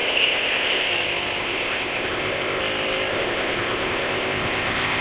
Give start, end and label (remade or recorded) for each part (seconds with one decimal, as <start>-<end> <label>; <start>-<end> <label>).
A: 0.0-0.9 remade; 0.9-1.4 recorded; 1.4-2.6 remade; 2.6-3.1 recorded; 3.1-5.0 remade